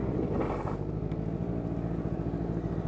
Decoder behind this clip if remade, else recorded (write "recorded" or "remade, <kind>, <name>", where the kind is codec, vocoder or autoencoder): recorded